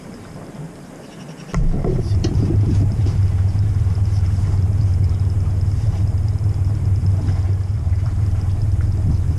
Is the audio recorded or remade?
remade